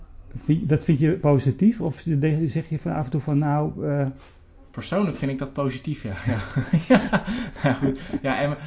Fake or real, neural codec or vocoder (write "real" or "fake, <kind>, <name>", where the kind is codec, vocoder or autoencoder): real